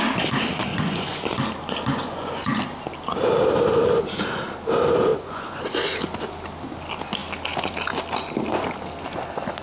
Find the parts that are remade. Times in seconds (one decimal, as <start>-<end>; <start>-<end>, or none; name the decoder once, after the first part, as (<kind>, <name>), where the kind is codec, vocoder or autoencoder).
0.7-1.2 (vocoder, Vocos); 1.9-2.6; 5.1-5.6